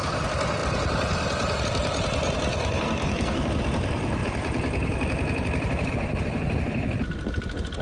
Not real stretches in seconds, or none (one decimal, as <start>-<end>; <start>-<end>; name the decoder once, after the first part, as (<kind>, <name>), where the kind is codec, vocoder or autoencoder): 2.5-3.4 (codec, SNAC)